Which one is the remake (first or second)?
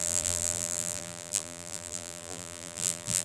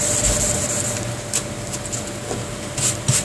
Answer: first